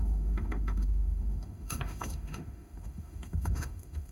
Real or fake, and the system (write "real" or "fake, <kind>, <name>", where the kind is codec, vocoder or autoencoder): fake, autoencoder, DAC-VAE